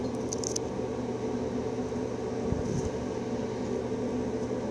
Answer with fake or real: real